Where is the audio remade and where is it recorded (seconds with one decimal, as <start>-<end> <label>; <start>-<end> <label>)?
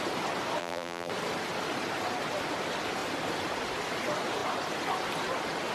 0.0-0.6 recorded; 0.6-1.1 remade; 1.1-5.7 recorded